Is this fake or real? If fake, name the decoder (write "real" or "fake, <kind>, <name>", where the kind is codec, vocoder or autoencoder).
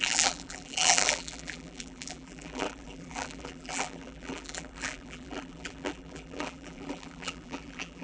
fake, vocoder, BigVGAN v2